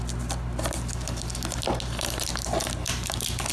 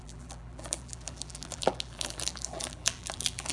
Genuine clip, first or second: first